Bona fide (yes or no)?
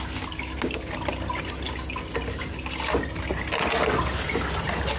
yes